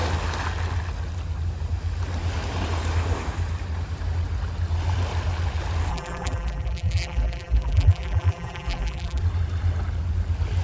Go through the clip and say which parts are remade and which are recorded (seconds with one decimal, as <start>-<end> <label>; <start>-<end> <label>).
0.0-5.9 recorded; 5.9-9.2 remade; 9.2-10.6 recorded